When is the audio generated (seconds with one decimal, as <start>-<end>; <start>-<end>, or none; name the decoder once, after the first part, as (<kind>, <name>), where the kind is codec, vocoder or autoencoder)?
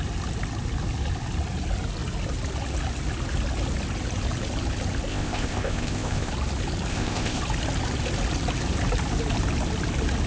5.1-6.3 (codec, ZipCodec); 6.9-7.4